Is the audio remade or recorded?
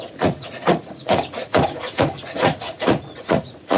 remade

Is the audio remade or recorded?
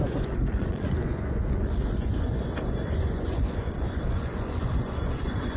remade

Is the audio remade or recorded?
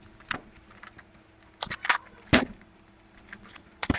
recorded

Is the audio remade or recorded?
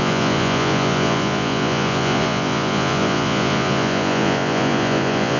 remade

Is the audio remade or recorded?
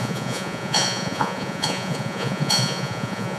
remade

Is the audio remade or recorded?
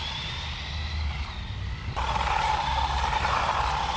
recorded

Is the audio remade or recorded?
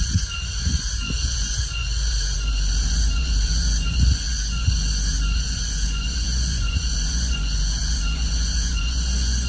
remade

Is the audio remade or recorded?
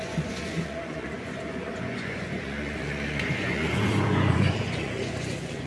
remade